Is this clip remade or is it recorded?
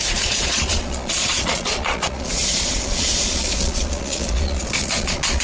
remade